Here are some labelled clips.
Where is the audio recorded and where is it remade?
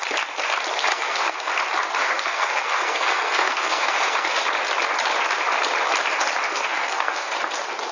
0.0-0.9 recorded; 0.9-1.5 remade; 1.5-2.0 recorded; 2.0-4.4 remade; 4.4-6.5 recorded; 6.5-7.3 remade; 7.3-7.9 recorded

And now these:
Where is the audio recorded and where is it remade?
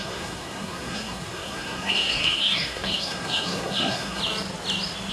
0.0-4.2 remade; 4.2-5.1 recorded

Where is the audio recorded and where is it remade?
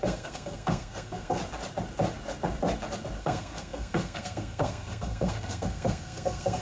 0.0-1.4 remade; 1.4-3.2 recorded; 3.2-6.6 remade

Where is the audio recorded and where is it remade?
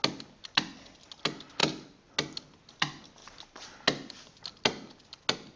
0.0-5.6 recorded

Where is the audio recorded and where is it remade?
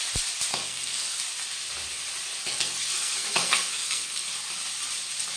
0.0-0.5 recorded; 0.5-1.2 remade; 1.2-2.5 recorded; 2.5-4.3 remade; 4.3-5.4 recorded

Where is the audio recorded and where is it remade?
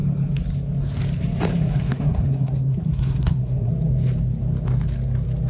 0.0-1.5 recorded; 1.5-3.7 remade; 3.7-5.5 recorded